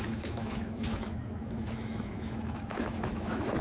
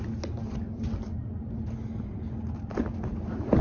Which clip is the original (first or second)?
second